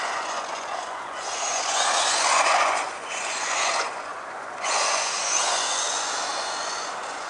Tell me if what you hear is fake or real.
fake